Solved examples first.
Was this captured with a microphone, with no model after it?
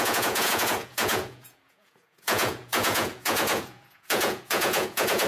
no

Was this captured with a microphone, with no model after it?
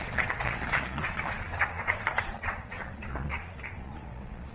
no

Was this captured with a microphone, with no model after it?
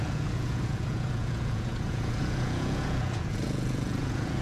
no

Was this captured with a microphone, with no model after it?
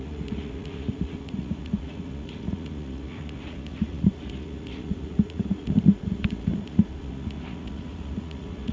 no